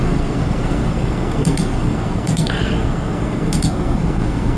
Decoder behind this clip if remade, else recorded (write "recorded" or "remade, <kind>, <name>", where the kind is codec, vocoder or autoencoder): remade, codec, SNAC